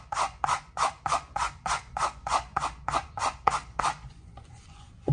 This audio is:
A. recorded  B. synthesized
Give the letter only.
B